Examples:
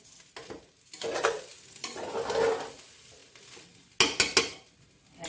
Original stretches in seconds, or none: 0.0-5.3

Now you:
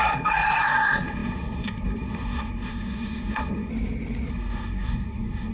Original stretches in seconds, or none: 3.7-4.3

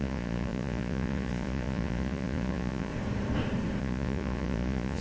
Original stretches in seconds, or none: 2.9-3.8